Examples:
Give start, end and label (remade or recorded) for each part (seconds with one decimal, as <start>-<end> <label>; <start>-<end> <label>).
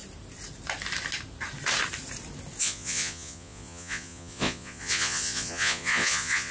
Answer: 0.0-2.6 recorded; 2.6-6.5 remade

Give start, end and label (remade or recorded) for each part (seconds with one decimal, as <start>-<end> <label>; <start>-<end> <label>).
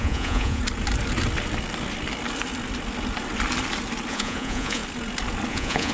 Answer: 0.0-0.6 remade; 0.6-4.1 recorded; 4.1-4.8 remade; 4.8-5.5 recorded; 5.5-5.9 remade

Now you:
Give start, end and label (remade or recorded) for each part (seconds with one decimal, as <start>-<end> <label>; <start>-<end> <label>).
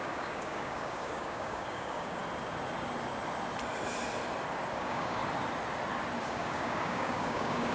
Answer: 0.0-2.2 remade; 2.2-4.7 recorded; 4.7-5.2 remade; 5.2-6.2 recorded; 6.2-7.7 remade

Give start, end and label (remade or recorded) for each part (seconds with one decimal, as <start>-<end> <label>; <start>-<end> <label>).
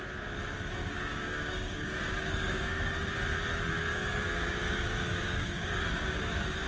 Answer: 0.0-0.8 recorded; 0.8-3.1 remade; 3.1-3.9 recorded; 3.9-6.7 remade